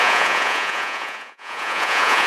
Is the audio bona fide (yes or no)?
no